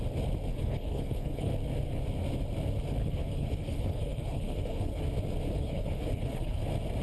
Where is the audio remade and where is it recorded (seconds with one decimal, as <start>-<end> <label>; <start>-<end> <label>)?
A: 0.0-0.5 recorded; 0.5-1.5 remade; 1.5-3.0 recorded; 3.0-5.0 remade; 5.0-5.5 recorded; 5.5-6.6 remade; 6.6-7.0 recorded